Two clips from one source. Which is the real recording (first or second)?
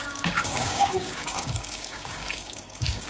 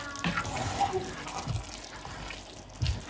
second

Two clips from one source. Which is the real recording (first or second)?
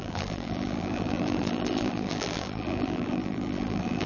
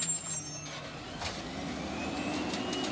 second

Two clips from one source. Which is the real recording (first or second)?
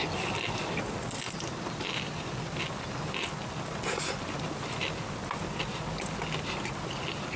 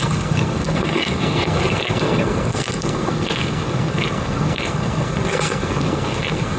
first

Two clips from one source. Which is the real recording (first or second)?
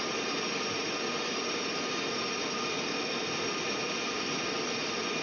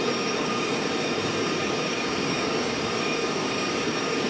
first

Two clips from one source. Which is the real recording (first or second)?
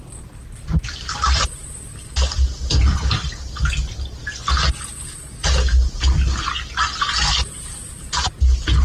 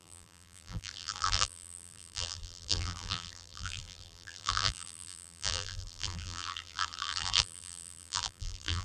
first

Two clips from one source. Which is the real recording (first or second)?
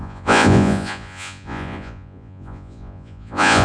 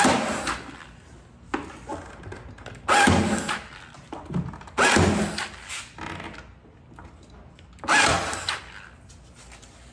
second